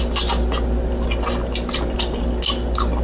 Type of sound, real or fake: real